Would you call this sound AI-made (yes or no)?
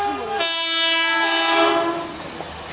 no